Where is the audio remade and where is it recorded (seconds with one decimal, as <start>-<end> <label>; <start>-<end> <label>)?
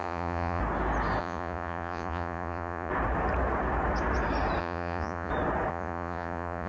0.0-0.6 remade; 0.6-1.2 recorded; 1.2-2.9 remade; 2.9-4.6 recorded; 4.6-5.3 remade; 5.3-5.7 recorded; 5.7-6.7 remade